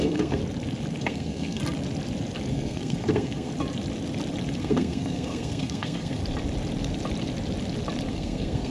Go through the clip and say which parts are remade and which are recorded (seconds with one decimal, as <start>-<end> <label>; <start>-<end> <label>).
0.0-0.4 remade; 0.4-1.0 recorded; 1.0-1.6 remade; 1.6-2.5 recorded; 2.5-3.5 remade; 3.5-4.6 recorded; 4.6-6.2 remade; 6.2-8.1 recorded; 8.1-8.7 remade